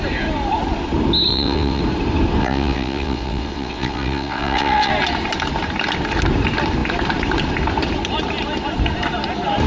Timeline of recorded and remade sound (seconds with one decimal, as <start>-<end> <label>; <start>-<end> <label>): 0.0-1.3 recorded; 1.3-1.8 remade; 1.8-2.4 recorded; 2.4-4.9 remade; 4.9-9.7 recorded

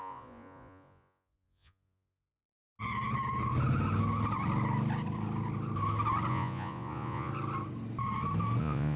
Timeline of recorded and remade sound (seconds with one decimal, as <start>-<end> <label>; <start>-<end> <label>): 0.0-2.7 remade; 2.7-6.3 recorded; 6.3-7.3 remade; 7.3-8.6 recorded; 8.6-9.0 remade

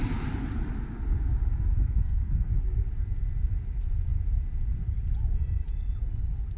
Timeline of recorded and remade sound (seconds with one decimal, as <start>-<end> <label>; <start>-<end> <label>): 0.0-1.5 recorded; 1.5-2.5 remade; 2.5-6.6 recorded

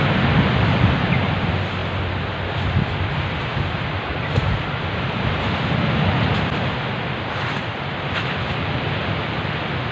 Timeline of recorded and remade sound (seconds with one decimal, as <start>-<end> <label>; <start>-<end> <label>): 0.0-9.9 recorded